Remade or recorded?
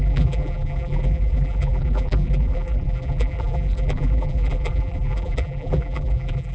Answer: remade